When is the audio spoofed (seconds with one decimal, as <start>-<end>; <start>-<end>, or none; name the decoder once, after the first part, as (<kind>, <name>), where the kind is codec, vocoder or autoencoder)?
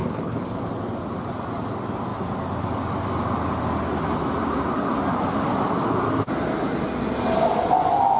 0.0-0.6 (codec, HILCodec)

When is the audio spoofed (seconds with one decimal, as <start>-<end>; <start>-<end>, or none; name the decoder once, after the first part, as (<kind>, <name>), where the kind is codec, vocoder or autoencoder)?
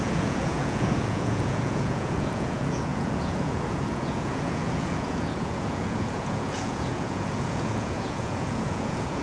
0.0-9.2 (vocoder, Vocos)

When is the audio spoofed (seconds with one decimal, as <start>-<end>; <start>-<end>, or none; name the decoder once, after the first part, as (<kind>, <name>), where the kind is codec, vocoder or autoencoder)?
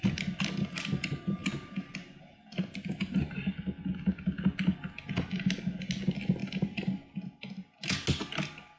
none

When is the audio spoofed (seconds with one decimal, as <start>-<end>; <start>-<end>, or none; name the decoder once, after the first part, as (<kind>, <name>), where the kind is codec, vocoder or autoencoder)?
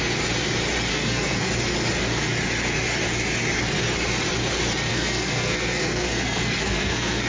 0.9-1.5 (codec, SNAC); 4.9-7.3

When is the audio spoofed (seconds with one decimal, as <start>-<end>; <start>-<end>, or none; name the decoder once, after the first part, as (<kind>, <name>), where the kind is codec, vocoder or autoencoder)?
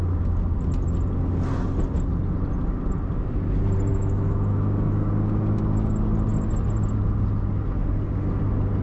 3.9-5.1 (autoencoder, DAC-VAE)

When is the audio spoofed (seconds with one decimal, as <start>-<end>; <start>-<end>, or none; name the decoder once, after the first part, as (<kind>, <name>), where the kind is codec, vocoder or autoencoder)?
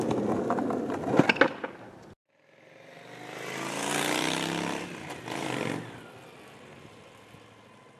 none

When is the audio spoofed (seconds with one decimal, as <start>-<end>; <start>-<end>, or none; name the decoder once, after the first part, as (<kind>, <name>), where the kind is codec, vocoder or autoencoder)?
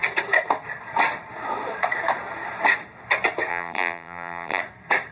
3.5-4.6 (vocoder, BigVGAN v2)